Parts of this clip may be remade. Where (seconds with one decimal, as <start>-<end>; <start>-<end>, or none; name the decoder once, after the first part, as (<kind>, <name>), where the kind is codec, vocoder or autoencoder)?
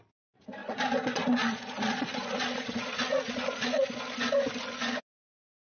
0.6-4.0 (vocoder, Vocos)